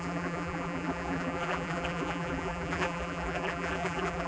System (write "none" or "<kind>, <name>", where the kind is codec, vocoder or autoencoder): vocoder, BigVGAN v2